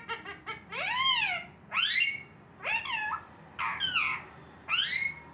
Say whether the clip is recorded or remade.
recorded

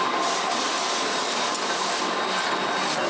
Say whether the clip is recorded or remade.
recorded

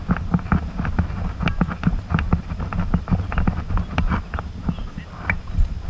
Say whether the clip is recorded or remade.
recorded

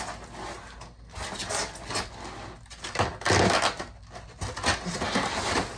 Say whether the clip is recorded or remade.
recorded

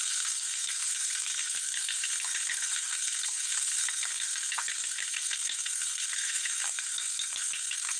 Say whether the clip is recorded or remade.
remade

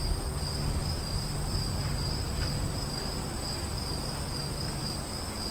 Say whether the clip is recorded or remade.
recorded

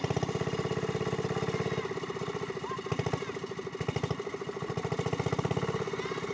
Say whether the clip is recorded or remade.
recorded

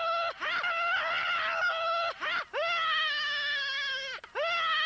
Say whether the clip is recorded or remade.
recorded